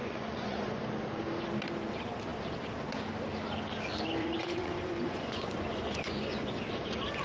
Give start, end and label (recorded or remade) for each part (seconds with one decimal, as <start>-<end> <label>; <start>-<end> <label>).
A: 0.0-0.8 remade; 0.8-4.2 recorded; 4.2-6.6 remade; 6.6-7.2 recorded